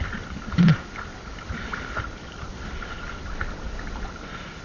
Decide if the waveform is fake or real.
fake